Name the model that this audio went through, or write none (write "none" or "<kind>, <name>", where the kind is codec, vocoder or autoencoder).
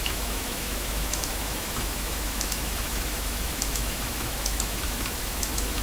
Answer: autoencoder, DAC-VAE